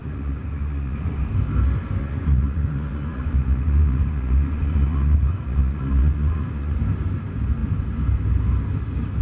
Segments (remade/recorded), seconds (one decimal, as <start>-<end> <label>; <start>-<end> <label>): 0.0-1.2 remade; 1.2-2.0 recorded; 2.0-6.8 remade; 6.8-9.2 recorded